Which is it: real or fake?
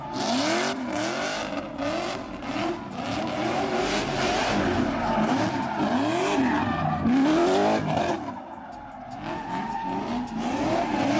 real